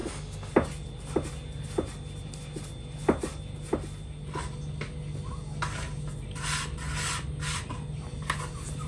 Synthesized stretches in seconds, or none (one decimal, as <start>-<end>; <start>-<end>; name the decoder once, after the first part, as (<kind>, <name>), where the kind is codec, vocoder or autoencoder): 0.0-0.5 (autoencoder, DAC-VAE)